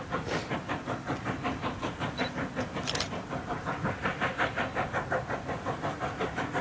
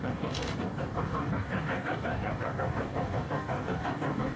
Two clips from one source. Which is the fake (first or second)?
second